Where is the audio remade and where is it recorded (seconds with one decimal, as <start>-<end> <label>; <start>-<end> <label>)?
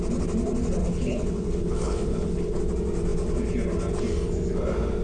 0.0-0.8 recorded; 0.8-2.6 remade; 2.6-5.0 recorded